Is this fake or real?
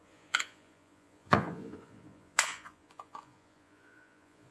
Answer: fake